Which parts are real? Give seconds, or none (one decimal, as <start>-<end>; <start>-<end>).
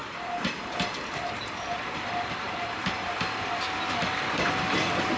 3.1-5.2